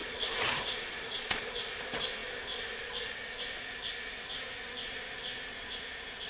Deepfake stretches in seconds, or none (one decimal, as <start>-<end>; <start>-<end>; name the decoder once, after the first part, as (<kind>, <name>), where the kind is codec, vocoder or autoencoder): 0.0-1.5 (vocoder, Vocos)